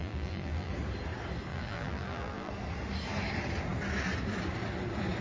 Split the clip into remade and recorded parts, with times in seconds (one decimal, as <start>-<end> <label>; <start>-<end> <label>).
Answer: 0.0-0.7 remade; 0.7-1.5 recorded; 1.5-2.5 remade; 2.5-5.2 recorded